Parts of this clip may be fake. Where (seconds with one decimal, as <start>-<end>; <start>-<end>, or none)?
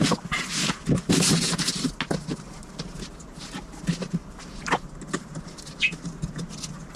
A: 4.2-4.9